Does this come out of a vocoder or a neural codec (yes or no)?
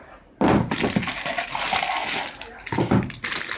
yes